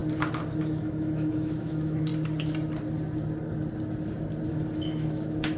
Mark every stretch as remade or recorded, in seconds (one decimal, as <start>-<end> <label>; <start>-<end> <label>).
0.0-0.6 recorded; 0.6-2.1 remade; 2.1-4.5 recorded; 4.5-5.6 remade